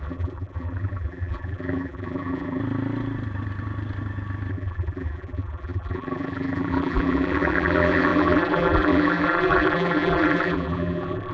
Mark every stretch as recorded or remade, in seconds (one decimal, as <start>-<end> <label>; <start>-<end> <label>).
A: 0.0-2.6 remade; 2.6-4.5 recorded; 4.5-11.3 remade